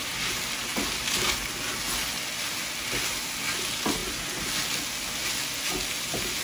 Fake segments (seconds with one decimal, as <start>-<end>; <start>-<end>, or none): 0.7-1.6

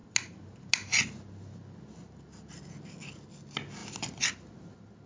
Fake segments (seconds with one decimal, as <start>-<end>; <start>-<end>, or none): none

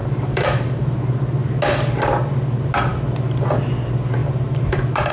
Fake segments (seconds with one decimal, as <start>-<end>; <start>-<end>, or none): 0.0-1.2; 4.2-5.1

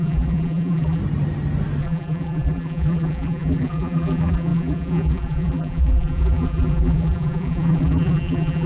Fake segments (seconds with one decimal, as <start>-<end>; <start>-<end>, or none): 0.0-1.0; 1.8-8.7

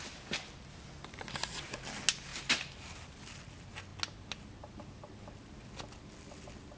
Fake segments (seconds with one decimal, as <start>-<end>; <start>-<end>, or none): 2.3-3.0